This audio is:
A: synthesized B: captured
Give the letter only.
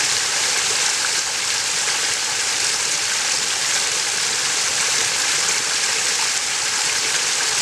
B